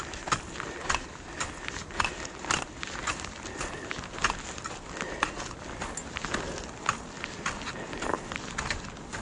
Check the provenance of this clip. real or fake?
real